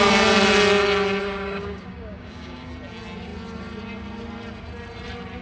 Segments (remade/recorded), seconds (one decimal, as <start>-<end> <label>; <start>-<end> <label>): 0.0-1.2 recorded; 1.2-2.7 remade; 2.7-5.4 recorded